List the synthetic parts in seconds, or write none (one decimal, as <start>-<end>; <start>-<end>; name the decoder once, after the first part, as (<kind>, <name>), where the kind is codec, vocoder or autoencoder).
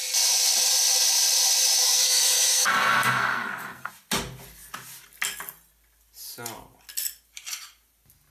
1.8-3.9 (codec, SNAC)